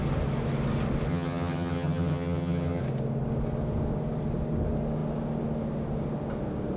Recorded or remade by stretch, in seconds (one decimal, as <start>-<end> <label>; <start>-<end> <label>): 0.0-1.1 recorded; 1.1-2.8 remade; 2.8-6.8 recorded